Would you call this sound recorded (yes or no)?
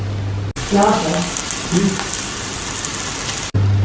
yes